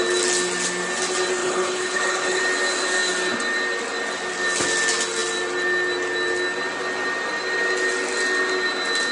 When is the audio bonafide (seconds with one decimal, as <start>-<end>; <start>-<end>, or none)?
0.0-1.4; 2.4-9.1